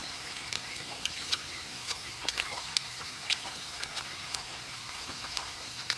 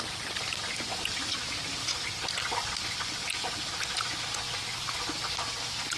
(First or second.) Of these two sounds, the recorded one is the second